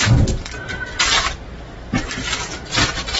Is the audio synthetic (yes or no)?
no